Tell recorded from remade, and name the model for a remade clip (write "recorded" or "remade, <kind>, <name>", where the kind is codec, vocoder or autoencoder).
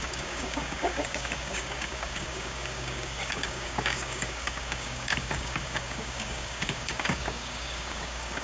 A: remade, codec, DAC